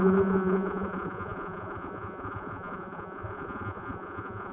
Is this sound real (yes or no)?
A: no